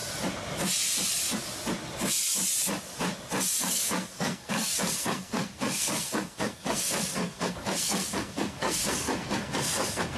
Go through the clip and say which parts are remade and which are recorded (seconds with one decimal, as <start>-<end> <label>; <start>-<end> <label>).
0.0-3.6 recorded; 3.6-10.2 remade